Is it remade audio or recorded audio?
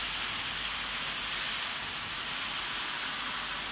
recorded